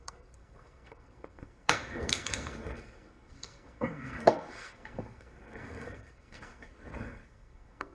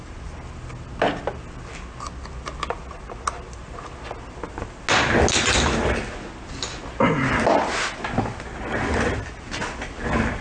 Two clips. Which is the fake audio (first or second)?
first